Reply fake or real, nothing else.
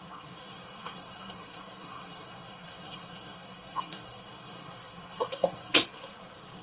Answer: fake